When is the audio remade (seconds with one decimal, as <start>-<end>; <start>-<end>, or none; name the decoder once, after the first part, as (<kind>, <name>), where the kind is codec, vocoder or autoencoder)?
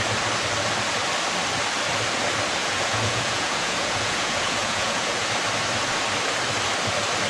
2.6-5.3 (vocoder, Vocos)